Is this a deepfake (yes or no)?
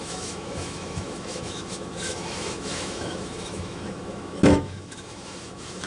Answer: yes